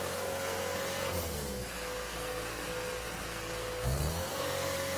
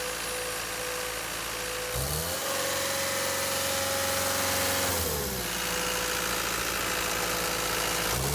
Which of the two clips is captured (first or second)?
second